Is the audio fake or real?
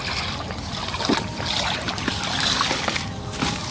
real